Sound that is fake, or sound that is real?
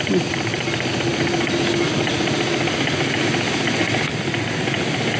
real